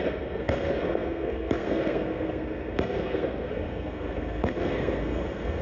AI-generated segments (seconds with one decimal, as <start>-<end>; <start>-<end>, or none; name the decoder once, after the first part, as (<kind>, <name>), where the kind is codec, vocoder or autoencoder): 0.0-5.6 (codec, SNAC)